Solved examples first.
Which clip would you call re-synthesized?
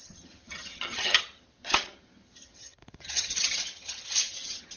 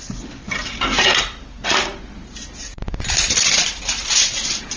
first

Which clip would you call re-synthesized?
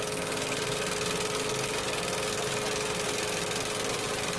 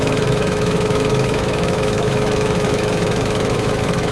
second